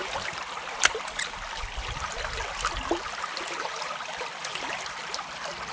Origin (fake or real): real